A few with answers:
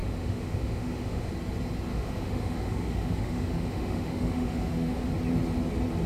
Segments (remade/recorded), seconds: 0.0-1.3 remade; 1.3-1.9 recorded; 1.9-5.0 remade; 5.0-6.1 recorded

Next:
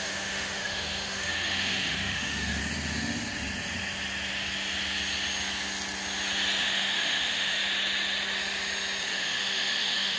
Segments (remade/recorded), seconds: 0.0-2.6 remade; 2.6-6.6 recorded; 6.6-7.6 remade; 7.6-9.0 recorded; 9.0-10.2 remade

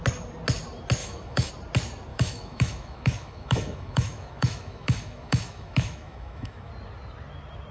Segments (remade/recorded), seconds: 0.0-1.0 recorded; 1.0-1.5 remade; 1.5-2.1 recorded; 2.1-6.7 remade; 6.7-7.7 recorded

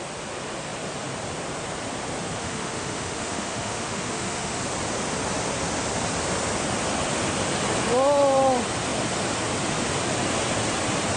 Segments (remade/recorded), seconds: 0.0-2.4 recorded; 2.4-4.6 remade; 4.6-11.2 recorded

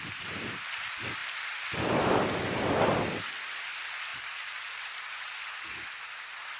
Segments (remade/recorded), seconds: 0.0-6.6 recorded

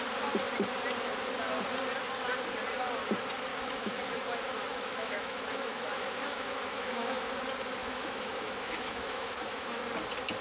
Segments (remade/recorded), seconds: 0.0-3.5 recorded; 3.5-4.0 remade; 4.0-4.7 recorded; 4.7-7.3 remade; 7.3-7.8 recorded; 7.8-9.8 remade; 9.8-10.4 recorded